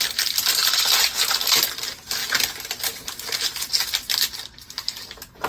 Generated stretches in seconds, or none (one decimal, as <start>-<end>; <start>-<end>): 0.6-1.1